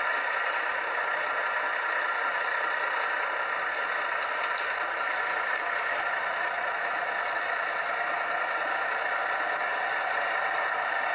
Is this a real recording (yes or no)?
yes